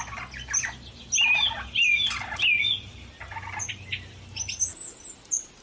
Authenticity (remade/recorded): recorded